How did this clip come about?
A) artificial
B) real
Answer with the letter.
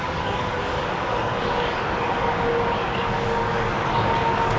A